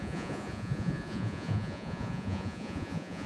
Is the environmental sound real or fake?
fake